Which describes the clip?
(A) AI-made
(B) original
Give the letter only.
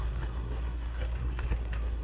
A